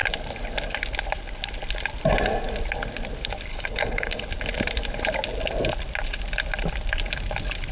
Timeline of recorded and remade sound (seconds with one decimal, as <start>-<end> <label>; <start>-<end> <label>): 0.0-3.5 recorded; 3.5-4.3 remade; 4.3-7.7 recorded